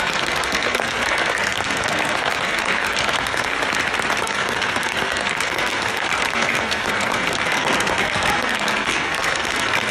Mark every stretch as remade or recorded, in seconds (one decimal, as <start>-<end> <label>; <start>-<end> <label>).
0.0-3.5 remade; 3.5-4.2 recorded; 4.2-9.9 remade